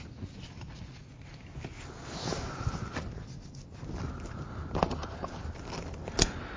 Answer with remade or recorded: recorded